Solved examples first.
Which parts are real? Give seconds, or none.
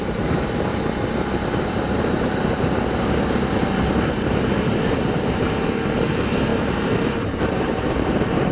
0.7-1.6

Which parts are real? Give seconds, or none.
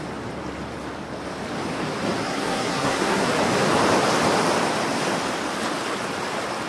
0.0-2.2; 3.3-6.7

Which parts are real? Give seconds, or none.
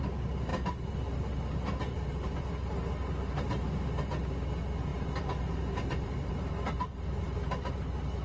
0.0-4.9; 6.3-8.2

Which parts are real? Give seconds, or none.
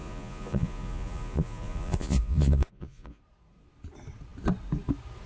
3.2-5.3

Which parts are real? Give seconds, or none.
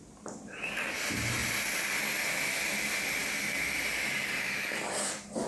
0.0-5.5